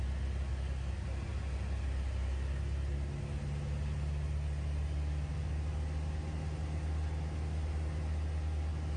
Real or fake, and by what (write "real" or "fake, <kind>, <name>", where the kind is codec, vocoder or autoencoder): real